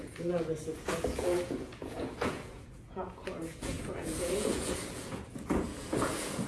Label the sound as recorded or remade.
remade